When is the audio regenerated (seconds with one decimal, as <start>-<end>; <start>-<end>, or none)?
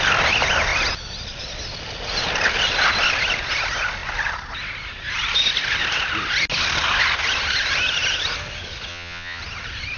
8.9-9.4